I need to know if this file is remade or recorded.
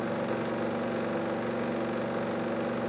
recorded